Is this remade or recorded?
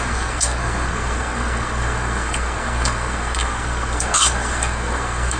remade